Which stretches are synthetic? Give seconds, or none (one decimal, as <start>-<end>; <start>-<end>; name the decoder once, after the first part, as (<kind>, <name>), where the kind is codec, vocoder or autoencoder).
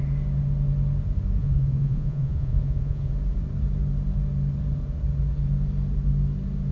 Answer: 1.4-3.1 (vocoder, Vocos)